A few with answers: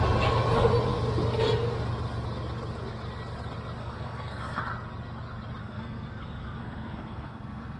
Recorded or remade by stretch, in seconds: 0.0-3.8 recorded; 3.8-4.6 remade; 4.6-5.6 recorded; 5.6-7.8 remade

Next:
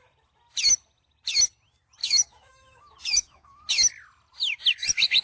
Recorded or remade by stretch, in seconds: 0.0-2.0 recorded; 2.0-3.7 remade; 3.7-5.2 recorded

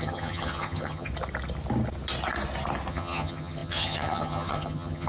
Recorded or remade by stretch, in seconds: 0.0-1.1 remade; 1.1-2.9 recorded; 2.9-5.1 remade

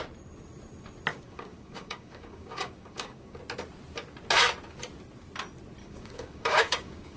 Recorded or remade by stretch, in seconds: 0.0-1.1 recorded; 1.1-3.4 remade; 3.4-5.8 recorded; 5.8-7.2 remade

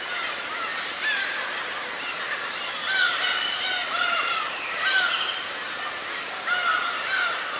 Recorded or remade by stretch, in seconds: 0.0-0.7 recorded; 0.7-2.2 remade; 2.2-3.8 recorded; 3.8-7.6 remade

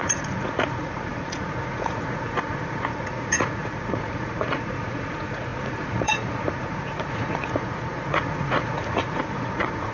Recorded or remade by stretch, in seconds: 0.0-9.9 remade

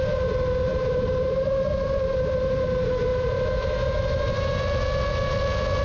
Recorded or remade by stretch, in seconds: 0.0-0.7 recorded; 0.7-2.6 remade; 2.6-3.1 recorded; 3.1-4.6 remade; 4.6-5.8 recorded